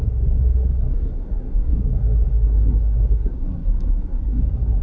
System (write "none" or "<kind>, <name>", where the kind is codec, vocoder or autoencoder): codec, SNAC